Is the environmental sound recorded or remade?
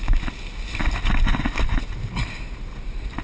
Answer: recorded